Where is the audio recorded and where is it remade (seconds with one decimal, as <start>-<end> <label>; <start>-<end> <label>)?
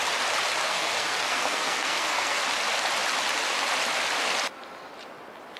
0.0-0.6 recorded; 0.6-2.4 remade; 2.4-5.6 recorded